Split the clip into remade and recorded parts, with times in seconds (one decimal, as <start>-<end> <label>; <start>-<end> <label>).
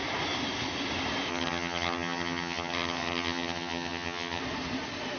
0.0-1.3 recorded; 1.3-4.4 remade; 4.4-5.2 recorded